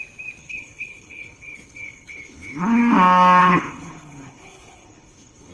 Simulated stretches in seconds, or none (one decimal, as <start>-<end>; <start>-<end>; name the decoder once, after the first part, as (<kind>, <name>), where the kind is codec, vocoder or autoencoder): 0.4-2.8 (codec, HILCodec); 3.4-5.5